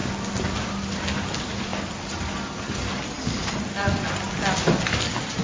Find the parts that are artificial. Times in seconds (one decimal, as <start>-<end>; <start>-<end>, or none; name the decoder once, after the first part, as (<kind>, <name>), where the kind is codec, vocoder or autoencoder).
none